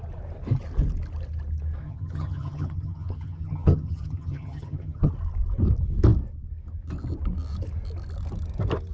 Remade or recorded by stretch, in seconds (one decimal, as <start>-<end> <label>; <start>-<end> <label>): 0.0-1.8 recorded; 1.8-5.1 remade; 5.1-8.9 recorded